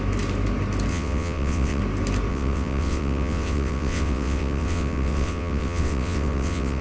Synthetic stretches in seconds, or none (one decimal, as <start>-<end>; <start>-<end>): 0.9-1.8; 2.3-6.8